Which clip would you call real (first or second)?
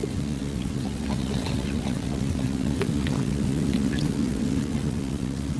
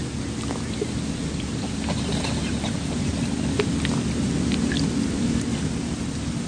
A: second